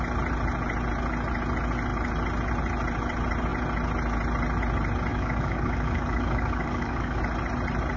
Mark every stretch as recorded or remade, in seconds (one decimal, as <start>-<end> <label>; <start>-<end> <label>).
0.0-5.1 recorded; 5.1-7.2 remade; 7.2-8.0 recorded